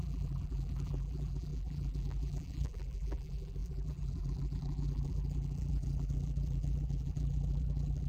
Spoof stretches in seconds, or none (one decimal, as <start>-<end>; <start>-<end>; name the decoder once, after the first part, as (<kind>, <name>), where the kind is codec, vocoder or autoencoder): 0.0-8.1 (vocoder, BigVGAN v2)